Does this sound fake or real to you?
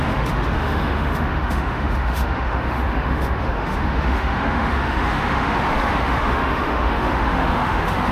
fake